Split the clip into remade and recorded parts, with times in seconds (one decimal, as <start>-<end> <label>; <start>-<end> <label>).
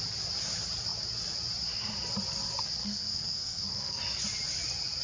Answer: 0.0-2.8 recorded; 2.8-4.0 remade; 4.0-5.0 recorded